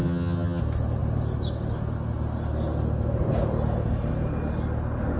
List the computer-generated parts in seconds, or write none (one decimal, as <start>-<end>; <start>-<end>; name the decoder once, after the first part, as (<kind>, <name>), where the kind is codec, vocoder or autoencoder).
0.0-0.6 (vocoder, HiFi-GAN)